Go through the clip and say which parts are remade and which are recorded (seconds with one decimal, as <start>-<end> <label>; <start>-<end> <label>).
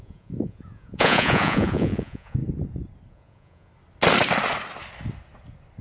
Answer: 0.0-2.4 remade; 2.4-3.1 recorded; 3.1-3.7 remade; 3.7-5.8 recorded